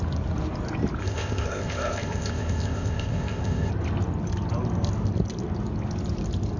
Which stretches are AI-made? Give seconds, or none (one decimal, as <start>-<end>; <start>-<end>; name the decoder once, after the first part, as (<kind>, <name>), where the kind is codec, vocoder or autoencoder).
1.0-3.7 (codec, ZipCodec)